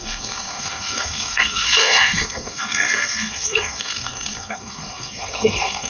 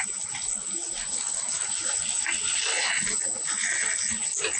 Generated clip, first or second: first